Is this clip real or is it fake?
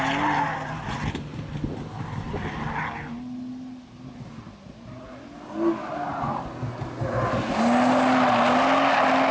real